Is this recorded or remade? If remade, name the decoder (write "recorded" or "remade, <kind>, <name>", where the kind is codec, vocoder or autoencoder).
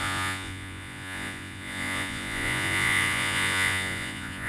remade, vocoder, Vocos